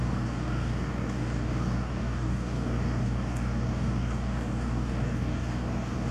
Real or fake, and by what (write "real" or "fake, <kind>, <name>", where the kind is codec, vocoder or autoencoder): fake, codec, DAC